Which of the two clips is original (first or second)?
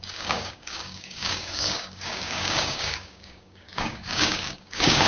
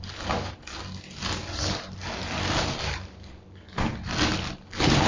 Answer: second